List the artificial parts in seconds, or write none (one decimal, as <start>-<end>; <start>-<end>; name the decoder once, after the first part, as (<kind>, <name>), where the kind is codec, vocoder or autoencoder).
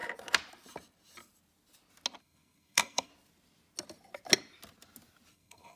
2.2-3.1 (codec, SNAC); 5.3-5.8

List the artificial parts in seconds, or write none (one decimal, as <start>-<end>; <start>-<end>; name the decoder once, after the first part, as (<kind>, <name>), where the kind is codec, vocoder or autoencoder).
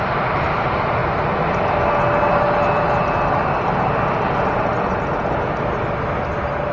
none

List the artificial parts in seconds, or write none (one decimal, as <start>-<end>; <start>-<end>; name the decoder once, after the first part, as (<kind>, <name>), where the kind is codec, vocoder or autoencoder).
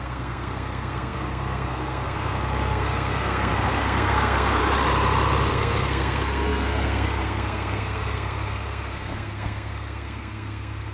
0.0-4.6 (codec, SNAC); 5.5-10.9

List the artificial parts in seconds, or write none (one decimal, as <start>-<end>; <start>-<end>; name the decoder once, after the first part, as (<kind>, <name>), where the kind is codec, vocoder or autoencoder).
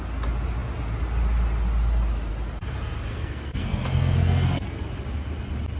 3.1-4.9 (codec, SNAC)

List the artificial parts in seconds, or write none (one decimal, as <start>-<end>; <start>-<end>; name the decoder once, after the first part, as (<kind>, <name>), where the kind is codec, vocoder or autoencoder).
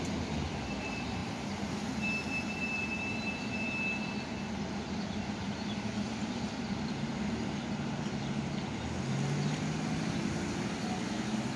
none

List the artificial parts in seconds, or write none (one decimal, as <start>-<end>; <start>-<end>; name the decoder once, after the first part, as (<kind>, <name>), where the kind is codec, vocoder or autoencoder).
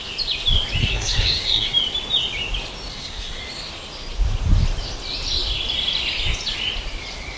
0.8-1.7 (codec, SNAC); 2.9-3.4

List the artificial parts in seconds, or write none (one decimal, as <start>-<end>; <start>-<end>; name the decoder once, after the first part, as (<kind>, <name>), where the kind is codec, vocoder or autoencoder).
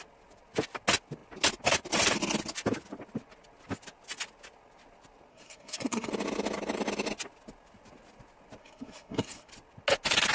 5.3-6.1 (codec, SNAC); 8.6-9.5